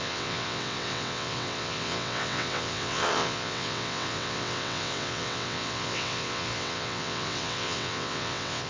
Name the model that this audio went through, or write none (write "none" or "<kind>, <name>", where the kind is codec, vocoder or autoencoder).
vocoder, WaveNeXt